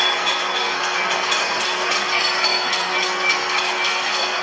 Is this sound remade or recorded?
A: remade